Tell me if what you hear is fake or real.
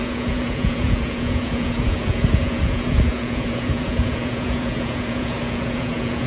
fake